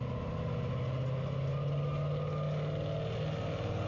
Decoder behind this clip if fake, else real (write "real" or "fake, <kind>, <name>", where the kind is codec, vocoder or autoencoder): real